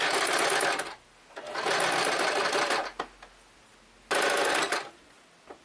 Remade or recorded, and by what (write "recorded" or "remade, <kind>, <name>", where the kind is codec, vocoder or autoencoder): recorded